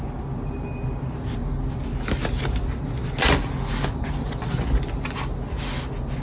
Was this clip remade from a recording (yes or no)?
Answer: no